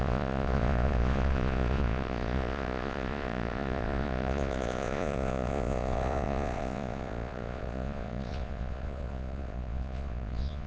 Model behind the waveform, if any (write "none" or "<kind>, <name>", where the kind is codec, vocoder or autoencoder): vocoder, Vocos